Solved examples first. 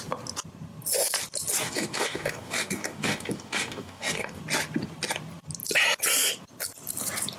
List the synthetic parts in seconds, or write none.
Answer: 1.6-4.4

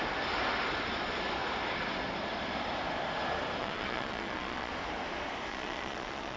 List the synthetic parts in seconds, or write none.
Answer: 3.6-4.7; 5.5-6.4

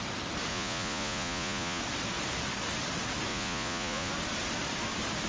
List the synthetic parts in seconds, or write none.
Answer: 0.5-1.8; 3.3-4.1

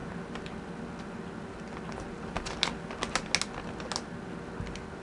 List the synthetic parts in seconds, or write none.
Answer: none